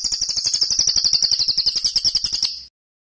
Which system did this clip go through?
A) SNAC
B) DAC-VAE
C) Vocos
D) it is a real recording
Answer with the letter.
D